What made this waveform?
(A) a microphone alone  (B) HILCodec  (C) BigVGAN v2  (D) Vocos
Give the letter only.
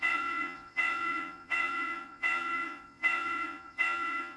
D